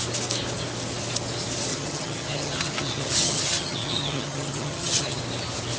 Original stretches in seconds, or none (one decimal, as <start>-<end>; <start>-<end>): 0.0-1.7; 5.2-5.8